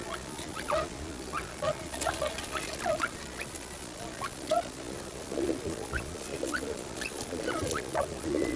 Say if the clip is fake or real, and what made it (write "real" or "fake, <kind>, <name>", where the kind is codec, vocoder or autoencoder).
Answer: fake, vocoder, Vocos